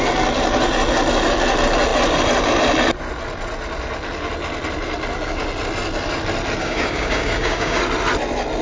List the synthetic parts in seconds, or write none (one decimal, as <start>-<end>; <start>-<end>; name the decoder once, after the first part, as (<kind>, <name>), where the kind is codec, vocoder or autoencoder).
6.6-7.8 (codec, DAC)